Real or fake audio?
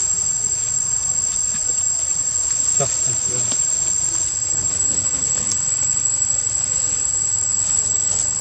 real